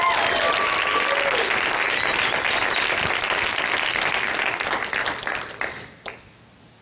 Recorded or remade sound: recorded